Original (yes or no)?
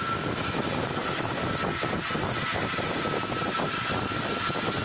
yes